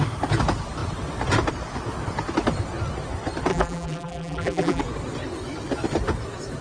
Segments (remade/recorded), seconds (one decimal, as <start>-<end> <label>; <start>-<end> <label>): 0.0-3.5 recorded; 3.5-4.8 remade; 4.8-6.6 recorded